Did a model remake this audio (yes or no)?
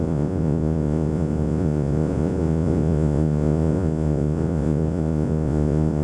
yes